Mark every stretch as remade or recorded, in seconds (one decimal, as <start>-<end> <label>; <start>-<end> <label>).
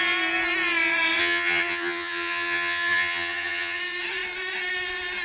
0.0-1.2 recorded; 1.2-3.8 remade; 3.8-5.2 recorded